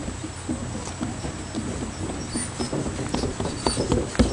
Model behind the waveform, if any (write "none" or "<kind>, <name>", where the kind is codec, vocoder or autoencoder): none